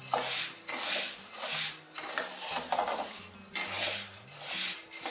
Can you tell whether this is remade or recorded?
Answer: recorded